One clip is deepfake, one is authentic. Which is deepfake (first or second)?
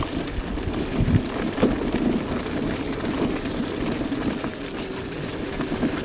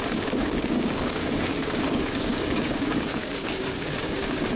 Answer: second